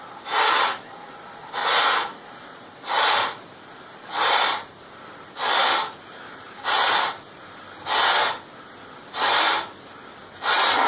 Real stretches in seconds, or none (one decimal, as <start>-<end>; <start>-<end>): 0.0-1.6; 4.9-5.6; 6.6-10.9